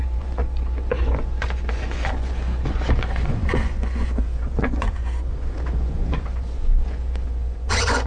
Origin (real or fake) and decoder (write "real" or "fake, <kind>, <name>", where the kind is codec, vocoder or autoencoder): fake, vocoder, Vocos